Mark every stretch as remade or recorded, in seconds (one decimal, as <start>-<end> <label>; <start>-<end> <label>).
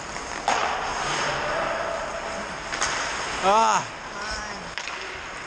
0.0-5.5 recorded